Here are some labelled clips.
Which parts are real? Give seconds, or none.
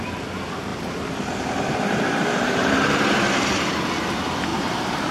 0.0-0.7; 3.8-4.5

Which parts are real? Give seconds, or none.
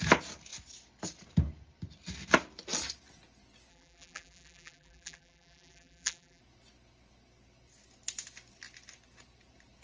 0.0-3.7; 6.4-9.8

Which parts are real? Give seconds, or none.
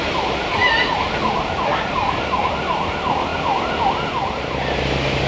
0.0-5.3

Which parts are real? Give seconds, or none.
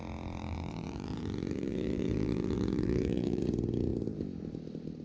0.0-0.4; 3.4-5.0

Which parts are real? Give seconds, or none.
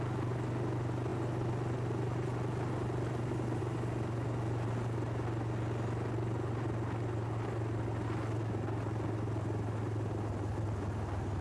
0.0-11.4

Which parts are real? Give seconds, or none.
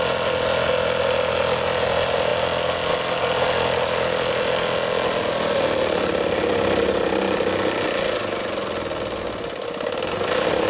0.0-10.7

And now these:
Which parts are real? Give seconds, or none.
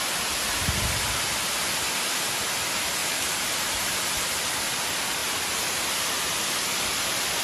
0.0-3.0; 4.4-7.4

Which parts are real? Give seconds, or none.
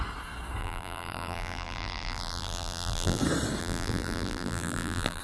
0.0-0.6; 3.2-3.6